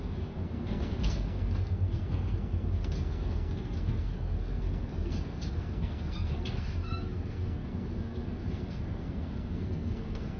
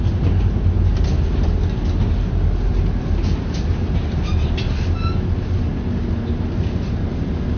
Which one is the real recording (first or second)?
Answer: second